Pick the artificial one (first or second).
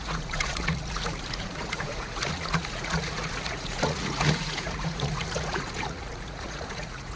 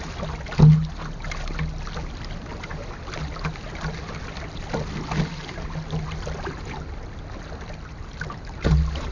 first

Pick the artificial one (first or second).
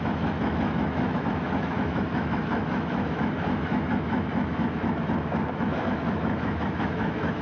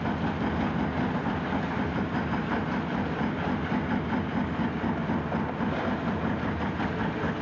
first